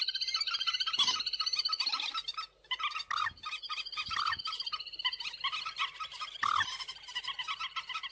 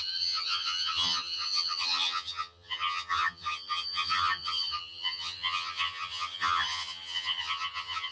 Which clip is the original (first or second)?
first